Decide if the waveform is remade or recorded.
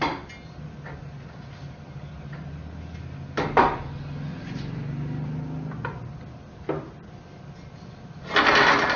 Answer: recorded